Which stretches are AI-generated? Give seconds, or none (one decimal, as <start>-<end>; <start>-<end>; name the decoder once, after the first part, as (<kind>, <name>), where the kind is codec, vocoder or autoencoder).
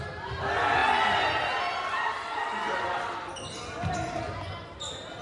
none